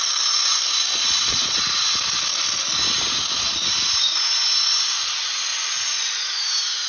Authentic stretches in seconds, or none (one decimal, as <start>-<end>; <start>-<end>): 0.0-1.0; 1.6-6.9